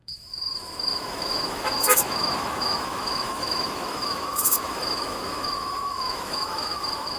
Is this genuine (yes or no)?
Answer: no